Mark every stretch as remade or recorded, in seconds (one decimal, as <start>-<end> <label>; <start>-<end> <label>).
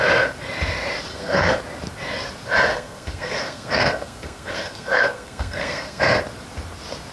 0.0-1.1 recorded; 1.1-1.6 remade; 1.6-2.7 recorded; 2.7-6.0 remade; 6.0-7.1 recorded